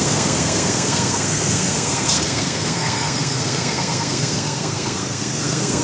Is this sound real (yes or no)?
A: no